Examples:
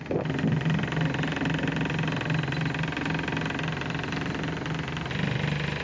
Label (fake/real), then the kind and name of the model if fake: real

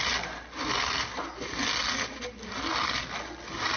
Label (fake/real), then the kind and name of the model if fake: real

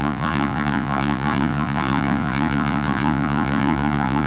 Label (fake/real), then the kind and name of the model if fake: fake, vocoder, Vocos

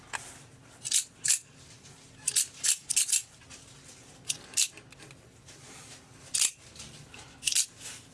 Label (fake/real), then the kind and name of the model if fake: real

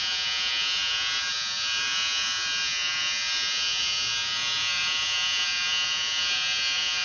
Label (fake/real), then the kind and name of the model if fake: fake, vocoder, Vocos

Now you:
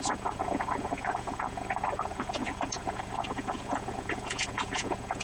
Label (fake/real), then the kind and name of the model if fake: fake, vocoder, Vocos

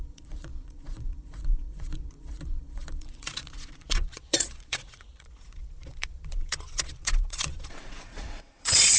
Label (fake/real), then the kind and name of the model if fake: fake, vocoder, Vocos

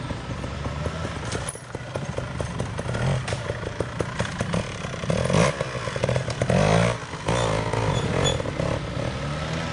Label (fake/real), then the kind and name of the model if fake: real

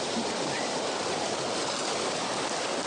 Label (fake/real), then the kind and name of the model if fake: real